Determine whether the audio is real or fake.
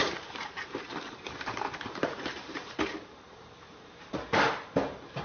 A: fake